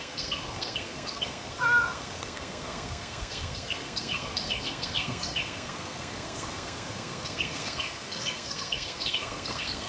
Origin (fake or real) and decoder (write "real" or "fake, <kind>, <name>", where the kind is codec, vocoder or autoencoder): fake, codec, SNAC